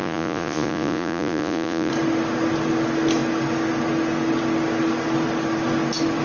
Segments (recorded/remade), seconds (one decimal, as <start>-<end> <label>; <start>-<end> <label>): 0.0-1.9 remade; 1.9-6.2 recorded